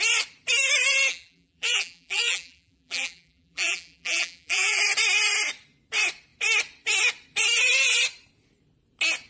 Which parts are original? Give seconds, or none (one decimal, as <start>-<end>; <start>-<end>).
0.0-1.1; 4.8-9.3